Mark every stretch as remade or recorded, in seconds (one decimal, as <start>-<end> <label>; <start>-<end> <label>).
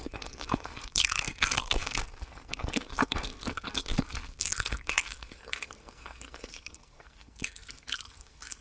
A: 0.0-8.6 remade